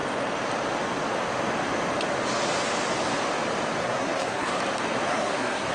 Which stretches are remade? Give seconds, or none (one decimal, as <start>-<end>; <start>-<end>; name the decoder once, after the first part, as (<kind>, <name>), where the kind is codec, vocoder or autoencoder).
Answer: 3.8-4.6 (codec, SNAC); 5.1-5.7